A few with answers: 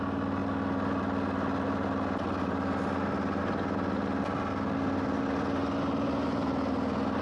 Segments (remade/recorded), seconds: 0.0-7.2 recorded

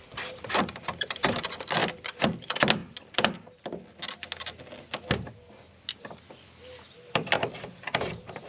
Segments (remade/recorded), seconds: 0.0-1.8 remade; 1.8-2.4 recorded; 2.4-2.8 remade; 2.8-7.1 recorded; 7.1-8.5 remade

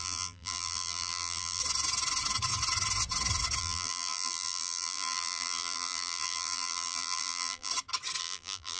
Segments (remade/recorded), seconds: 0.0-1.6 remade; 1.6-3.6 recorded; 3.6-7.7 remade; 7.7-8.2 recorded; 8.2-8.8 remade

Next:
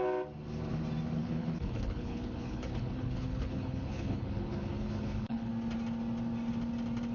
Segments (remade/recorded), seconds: 0.0-1.2 recorded; 1.2-5.5 remade; 5.5-7.1 recorded

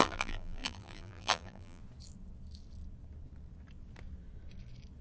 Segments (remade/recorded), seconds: 0.0-1.8 remade; 1.8-5.0 recorded

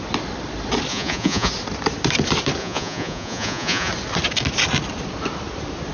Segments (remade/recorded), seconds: 0.0-0.9 recorded; 0.9-1.5 remade; 1.5-2.6 recorded; 2.6-3.9 remade; 3.9-5.9 recorded